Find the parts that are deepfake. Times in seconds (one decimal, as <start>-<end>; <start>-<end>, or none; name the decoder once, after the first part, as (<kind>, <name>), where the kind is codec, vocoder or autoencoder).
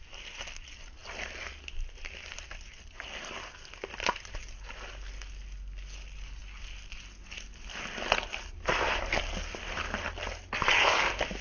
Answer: none